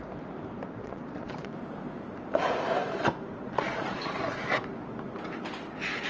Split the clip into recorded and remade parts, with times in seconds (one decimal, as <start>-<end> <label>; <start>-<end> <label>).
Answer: 0.0-0.8 recorded; 0.8-1.5 remade; 1.5-3.4 recorded; 3.4-4.2 remade; 4.2-6.1 recorded

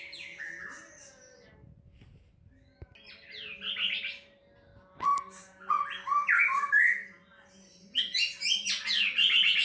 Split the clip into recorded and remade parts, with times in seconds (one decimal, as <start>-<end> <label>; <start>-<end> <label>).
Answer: 0.0-9.6 recorded

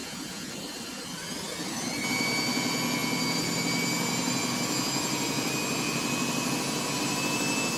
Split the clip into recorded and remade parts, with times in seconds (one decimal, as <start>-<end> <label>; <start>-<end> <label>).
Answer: 0.0-0.5 remade; 0.5-7.8 recorded

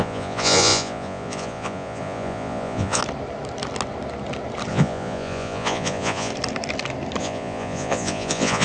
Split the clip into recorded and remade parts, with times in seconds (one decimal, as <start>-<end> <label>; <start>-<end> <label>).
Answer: 0.0-3.0 remade; 3.0-4.7 recorded; 4.7-6.3 remade; 6.3-7.2 recorded; 7.2-8.6 remade

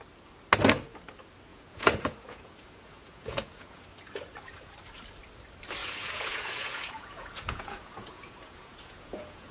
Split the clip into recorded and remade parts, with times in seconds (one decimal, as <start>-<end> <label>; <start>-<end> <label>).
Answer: 0.0-1.5 recorded; 1.5-3.8 remade; 3.8-5.8 recorded; 5.8-9.5 remade

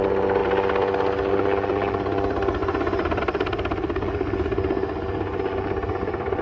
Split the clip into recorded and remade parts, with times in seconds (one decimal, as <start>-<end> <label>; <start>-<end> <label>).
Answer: 0.0-6.4 recorded

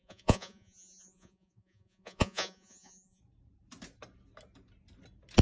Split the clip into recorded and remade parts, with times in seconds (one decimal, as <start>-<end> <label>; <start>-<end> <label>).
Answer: 0.0-3.2 remade; 3.2-5.4 recorded

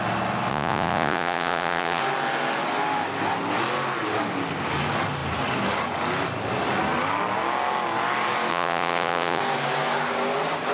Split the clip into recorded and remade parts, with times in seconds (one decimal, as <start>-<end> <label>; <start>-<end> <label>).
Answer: 0.0-0.5 recorded; 0.5-2.0 remade; 2.0-8.5 recorded; 8.5-9.4 remade; 9.4-10.7 recorded